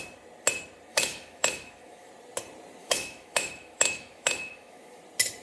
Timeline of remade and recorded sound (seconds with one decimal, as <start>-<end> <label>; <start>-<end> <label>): 0.0-0.9 recorded; 0.9-2.1 remade; 2.1-2.8 recorded; 2.8-5.0 remade; 5.0-5.4 recorded